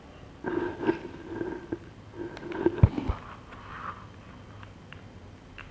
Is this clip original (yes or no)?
yes